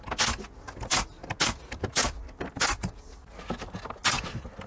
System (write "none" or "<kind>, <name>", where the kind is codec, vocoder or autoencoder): none